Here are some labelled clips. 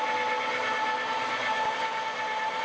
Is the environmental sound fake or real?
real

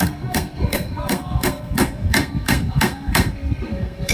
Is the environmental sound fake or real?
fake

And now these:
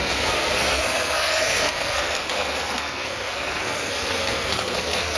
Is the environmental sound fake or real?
fake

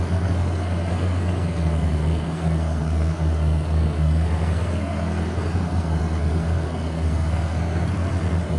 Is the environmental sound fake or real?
fake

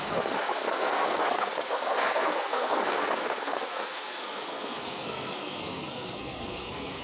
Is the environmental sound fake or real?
fake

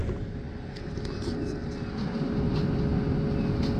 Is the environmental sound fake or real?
real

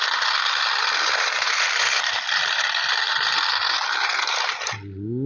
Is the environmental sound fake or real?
real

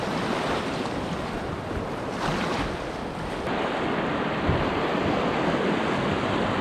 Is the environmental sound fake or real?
real